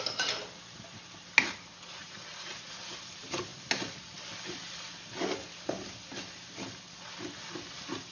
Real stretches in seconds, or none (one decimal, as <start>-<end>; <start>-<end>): 0.0-2.0; 2.8-8.1